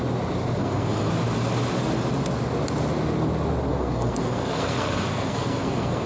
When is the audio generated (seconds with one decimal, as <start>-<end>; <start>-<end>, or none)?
0.6-1.1; 3.7-6.1